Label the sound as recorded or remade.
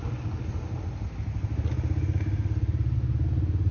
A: recorded